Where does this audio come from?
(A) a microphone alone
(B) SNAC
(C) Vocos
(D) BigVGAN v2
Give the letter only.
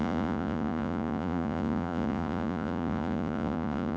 C